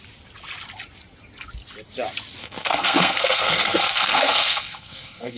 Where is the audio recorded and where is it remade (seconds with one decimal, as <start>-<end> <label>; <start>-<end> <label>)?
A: 0.0-2.4 recorded; 2.4-5.4 remade

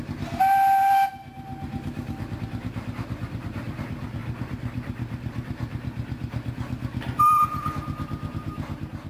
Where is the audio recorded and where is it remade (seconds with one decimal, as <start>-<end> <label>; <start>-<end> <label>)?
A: 0.0-1.5 recorded; 1.5-2.4 remade; 2.4-4.2 recorded; 4.2-7.7 remade; 7.7-9.1 recorded

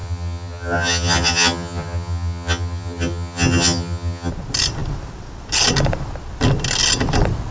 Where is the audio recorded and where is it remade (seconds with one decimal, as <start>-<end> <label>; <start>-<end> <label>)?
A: 0.0-4.3 remade; 4.3-7.5 recorded

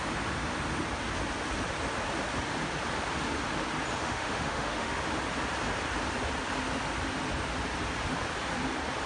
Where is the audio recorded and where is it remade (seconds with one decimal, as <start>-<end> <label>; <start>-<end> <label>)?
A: 0.0-4.0 recorded; 4.0-5.0 remade; 5.0-9.1 recorded

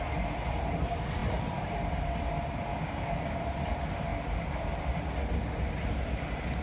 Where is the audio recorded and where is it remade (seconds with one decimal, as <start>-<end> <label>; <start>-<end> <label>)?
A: 0.0-2.7 recorded; 2.7-3.4 remade; 3.4-6.6 recorded

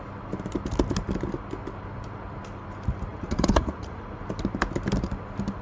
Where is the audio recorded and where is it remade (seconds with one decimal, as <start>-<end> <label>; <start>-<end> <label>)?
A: 0.0-3.1 recorded; 3.1-4.2 remade; 4.2-5.6 recorded